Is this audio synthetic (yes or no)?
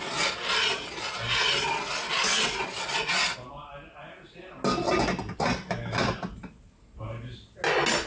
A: no